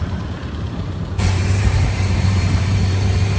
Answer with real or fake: fake